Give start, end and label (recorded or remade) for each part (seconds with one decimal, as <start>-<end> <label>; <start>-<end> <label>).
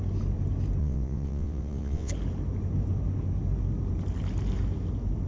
0.0-0.8 recorded; 0.8-2.1 remade; 2.1-5.3 recorded